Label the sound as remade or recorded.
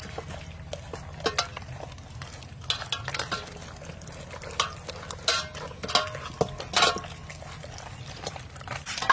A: recorded